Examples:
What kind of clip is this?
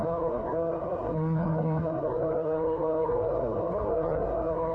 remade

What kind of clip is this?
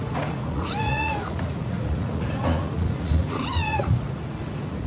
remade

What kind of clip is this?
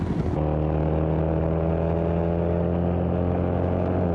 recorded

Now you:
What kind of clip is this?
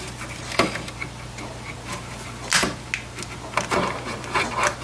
recorded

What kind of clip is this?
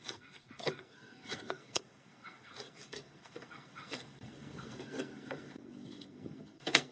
remade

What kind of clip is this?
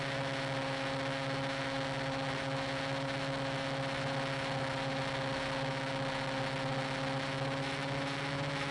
recorded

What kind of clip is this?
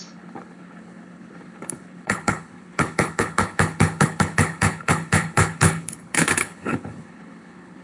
remade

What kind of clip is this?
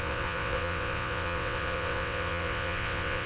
remade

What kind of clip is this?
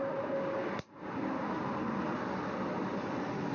recorded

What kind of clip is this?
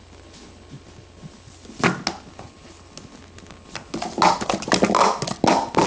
recorded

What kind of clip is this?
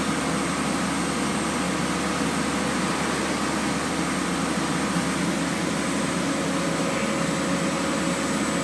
recorded